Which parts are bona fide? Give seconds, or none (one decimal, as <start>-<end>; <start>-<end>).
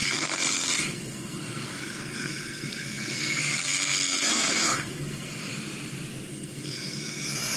5.5-6.3